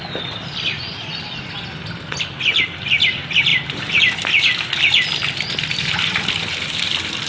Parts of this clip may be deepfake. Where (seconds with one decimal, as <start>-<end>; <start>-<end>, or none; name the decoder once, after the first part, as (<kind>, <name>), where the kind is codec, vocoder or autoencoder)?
3.5-4.0 (vocoder, BigVGAN v2)